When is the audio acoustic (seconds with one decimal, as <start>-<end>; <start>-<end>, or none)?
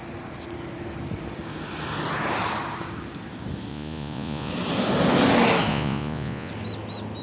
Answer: 0.0-3.7; 4.5-5.7; 6.5-7.2